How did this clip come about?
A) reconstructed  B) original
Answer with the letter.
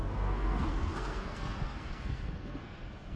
A